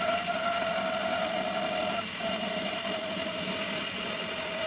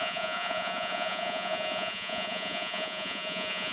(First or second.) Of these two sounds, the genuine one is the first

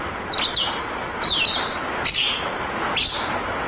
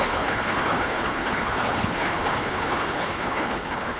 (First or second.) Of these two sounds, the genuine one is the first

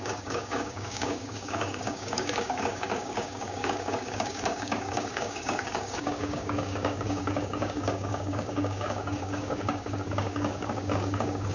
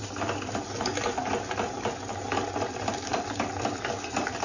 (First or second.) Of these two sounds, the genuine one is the second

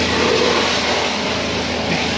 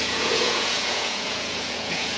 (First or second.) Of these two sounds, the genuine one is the first